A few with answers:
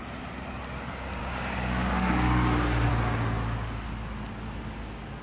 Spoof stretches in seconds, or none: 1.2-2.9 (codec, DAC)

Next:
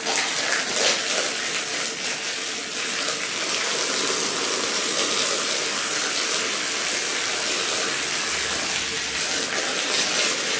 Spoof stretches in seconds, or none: none

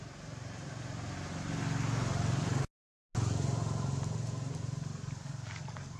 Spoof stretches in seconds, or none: 4.9-6.0 (codec, DAC)

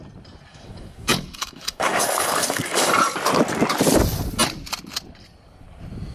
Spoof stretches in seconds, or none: 0.5-2.9 (codec, DAC)

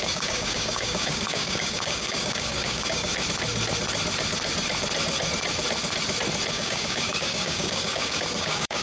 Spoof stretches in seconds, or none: 0.0-3.1 (codec, DAC); 6.5-8.8

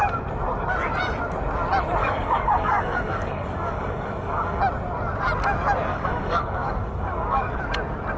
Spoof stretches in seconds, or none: 2.0-4.6 (codec, DAC); 5.9-7.6